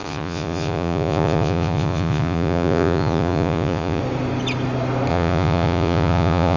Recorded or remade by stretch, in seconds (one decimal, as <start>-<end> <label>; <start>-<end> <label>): 0.0-4.0 remade; 4.0-5.1 recorded; 5.1-6.6 remade